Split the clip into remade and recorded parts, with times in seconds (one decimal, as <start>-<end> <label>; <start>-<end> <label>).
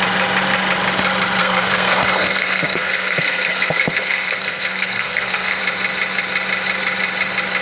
0.0-1.4 recorded; 1.4-5.6 remade; 5.6-7.6 recorded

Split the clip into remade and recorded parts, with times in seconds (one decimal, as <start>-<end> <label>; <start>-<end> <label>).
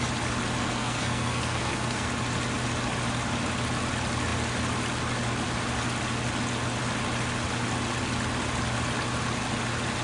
0.0-0.6 recorded; 0.6-2.1 remade; 2.1-10.0 recorded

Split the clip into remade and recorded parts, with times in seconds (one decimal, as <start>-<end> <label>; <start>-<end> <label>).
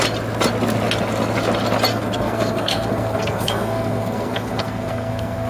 0.0-1.9 recorded; 1.9-5.5 remade